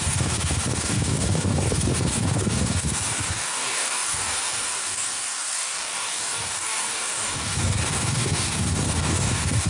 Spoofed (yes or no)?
yes